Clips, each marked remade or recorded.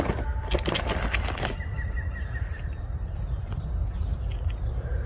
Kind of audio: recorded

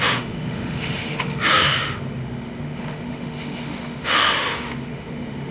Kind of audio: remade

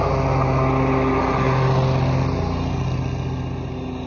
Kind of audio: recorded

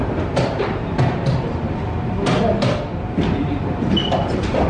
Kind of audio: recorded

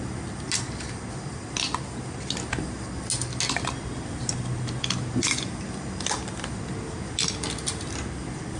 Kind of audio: recorded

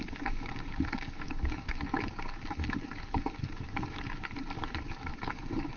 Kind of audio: remade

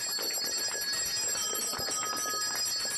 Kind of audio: recorded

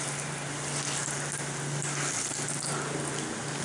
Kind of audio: recorded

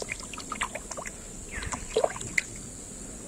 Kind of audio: recorded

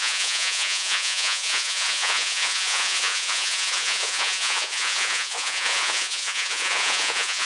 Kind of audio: remade